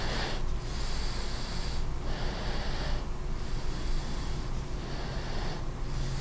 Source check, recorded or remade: recorded